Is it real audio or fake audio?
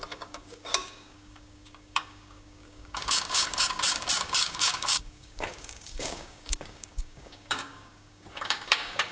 fake